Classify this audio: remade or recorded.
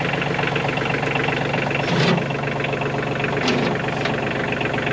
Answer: recorded